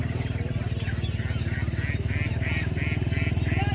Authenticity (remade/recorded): recorded